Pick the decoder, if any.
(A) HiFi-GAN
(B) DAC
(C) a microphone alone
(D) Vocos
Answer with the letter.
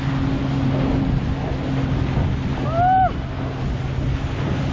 C